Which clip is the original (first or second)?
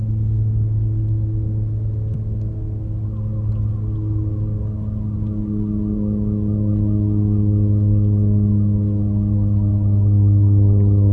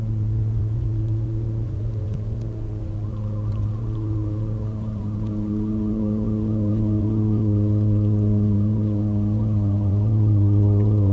first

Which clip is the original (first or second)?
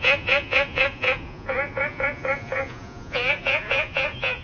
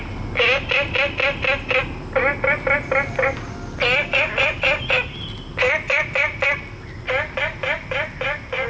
second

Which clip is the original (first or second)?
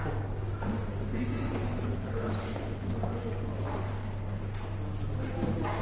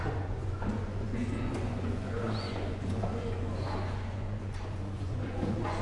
first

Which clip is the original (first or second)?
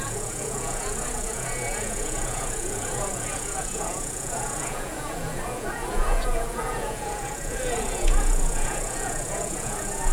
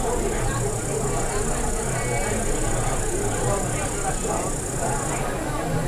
second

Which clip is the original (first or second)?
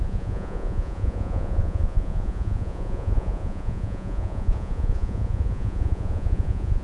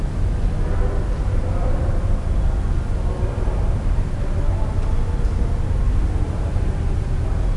second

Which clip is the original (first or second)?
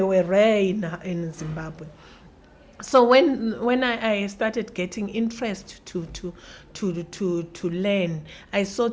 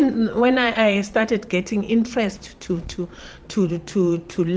first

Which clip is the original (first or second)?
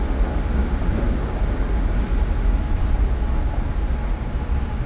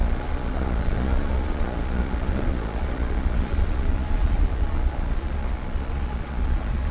first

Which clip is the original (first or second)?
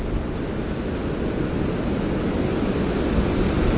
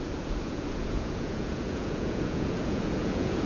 first